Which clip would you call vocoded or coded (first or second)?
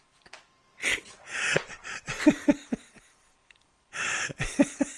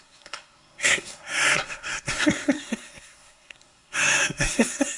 second